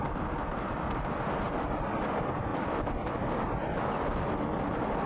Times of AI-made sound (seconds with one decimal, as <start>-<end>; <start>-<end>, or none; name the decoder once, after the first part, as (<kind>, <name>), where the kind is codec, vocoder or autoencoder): 2.5-3.3 (vocoder, BigVGAN v2)